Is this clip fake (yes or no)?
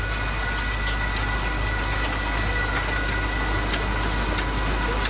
no